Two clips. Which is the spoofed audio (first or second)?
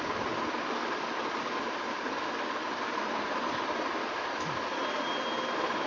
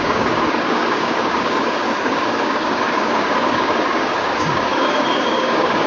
second